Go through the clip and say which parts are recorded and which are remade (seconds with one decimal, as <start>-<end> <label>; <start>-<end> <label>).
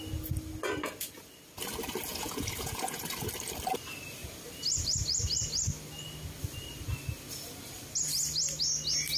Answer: 0.0-2.1 recorded; 2.1-3.0 remade; 3.0-9.2 recorded